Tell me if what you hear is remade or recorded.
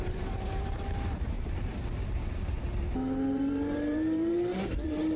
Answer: remade